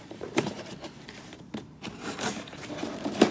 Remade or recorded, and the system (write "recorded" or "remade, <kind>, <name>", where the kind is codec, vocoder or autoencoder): remade, vocoder, BigVGAN v2